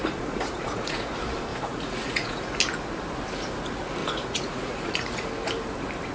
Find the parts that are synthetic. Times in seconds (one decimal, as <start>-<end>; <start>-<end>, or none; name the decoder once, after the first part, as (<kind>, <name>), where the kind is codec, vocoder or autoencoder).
0.0-1.1 (vocoder, Vocos); 1.5-2.5; 4.0-5.3